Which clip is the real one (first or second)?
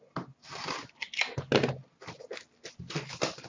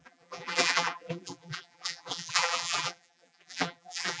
first